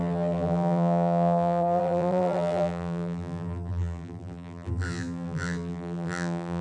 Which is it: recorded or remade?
remade